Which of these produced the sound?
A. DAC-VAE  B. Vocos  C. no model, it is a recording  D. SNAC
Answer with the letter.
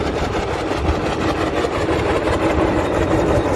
C